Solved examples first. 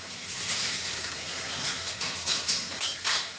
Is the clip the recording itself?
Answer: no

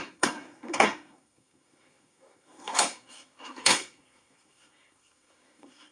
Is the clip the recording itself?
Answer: no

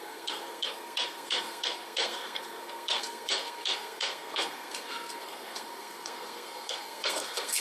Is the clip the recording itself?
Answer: no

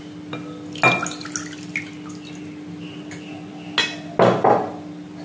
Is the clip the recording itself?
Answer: yes